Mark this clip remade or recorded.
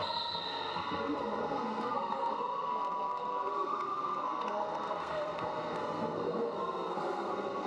remade